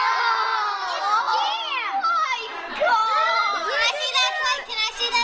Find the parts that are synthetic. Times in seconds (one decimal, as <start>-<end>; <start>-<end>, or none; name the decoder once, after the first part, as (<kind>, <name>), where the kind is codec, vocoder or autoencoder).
0.5-1.2 (vocoder, BigVGAN v2); 3.0-3.9